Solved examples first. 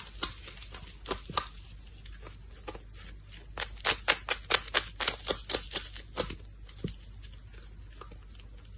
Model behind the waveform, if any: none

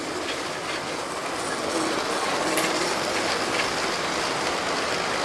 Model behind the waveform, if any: none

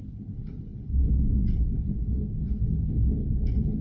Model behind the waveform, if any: codec, HILCodec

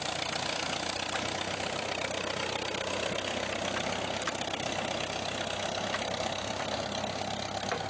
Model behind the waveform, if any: none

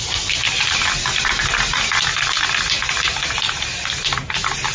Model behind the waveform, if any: none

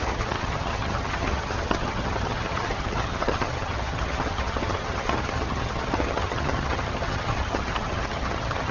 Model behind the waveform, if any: vocoder, HiFi-GAN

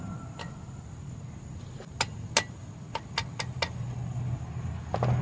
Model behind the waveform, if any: none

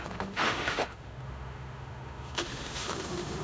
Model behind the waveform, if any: autoencoder, DAC-VAE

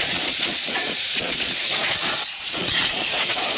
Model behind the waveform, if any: vocoder, Vocos